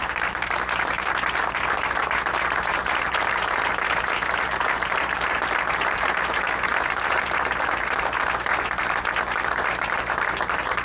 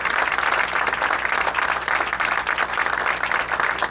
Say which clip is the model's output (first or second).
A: first